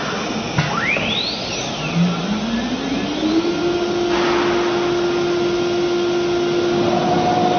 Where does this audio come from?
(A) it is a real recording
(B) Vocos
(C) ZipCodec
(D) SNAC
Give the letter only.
A